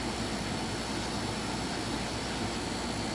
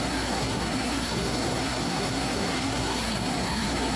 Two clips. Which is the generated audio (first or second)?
second